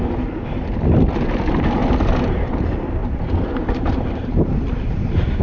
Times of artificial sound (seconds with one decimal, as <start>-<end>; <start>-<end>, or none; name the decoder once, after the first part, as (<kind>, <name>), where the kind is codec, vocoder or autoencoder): 1.8-2.5 (vocoder, BigVGAN v2); 3.0-5.4